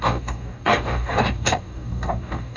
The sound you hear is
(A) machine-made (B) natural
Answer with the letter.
A